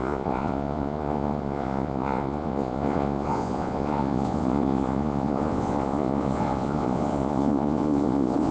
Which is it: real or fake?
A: fake